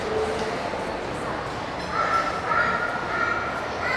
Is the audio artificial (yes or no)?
no